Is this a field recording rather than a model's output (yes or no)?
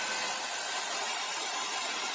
no